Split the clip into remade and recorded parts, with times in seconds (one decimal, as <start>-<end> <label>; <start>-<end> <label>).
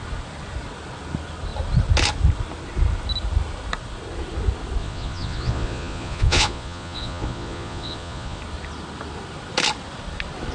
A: 0.0-4.8 recorded; 4.8-8.4 remade; 8.4-10.5 recorded